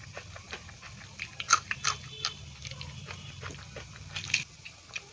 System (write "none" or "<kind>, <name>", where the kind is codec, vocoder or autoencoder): none